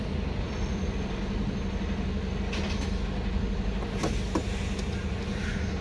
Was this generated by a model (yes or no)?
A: no